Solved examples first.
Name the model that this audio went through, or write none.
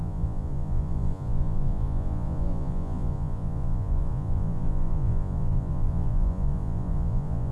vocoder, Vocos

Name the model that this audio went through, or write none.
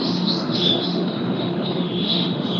autoencoder, DAC-VAE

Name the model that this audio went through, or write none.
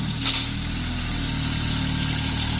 none